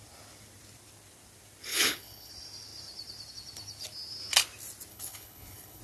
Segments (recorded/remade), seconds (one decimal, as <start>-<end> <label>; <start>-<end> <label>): 0.0-1.7 recorded; 1.7-2.3 remade; 2.3-4.9 recorded; 4.9-5.8 remade

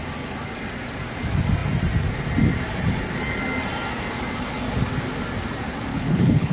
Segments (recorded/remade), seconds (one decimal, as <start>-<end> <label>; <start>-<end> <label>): 0.0-5.9 recorded; 5.9-6.5 remade

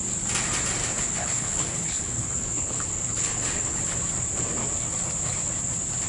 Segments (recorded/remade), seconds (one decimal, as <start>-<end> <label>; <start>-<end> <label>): 0.0-0.8 recorded; 0.8-3.8 remade; 3.8-6.1 recorded

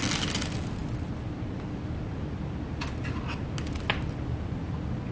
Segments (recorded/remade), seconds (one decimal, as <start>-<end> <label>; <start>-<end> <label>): 0.0-5.1 recorded

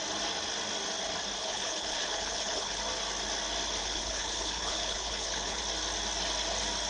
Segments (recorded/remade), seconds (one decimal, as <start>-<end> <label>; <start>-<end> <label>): 0.0-1.4 recorded; 1.4-2.8 remade; 2.8-3.8 recorded; 3.8-5.6 remade; 5.6-6.9 recorded